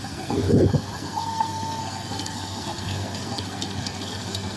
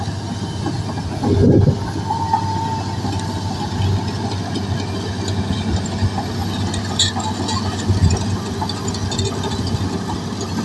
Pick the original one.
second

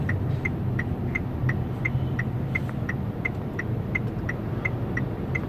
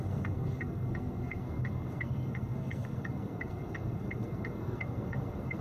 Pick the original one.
first